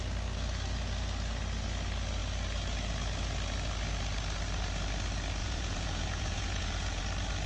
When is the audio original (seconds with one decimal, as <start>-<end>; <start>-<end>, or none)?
0.0-5.4; 7.0-7.5